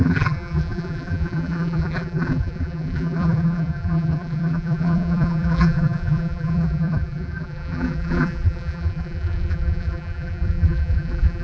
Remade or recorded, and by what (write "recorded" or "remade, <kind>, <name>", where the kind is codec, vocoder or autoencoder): remade, vocoder, BigVGAN v2